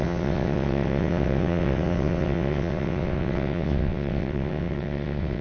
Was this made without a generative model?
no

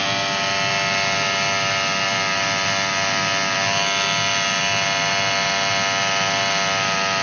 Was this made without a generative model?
yes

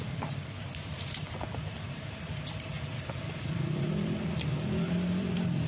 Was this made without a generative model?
no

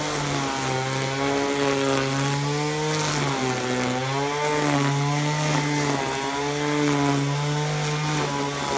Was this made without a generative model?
yes